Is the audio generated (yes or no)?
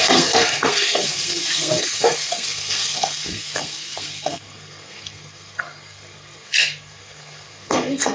yes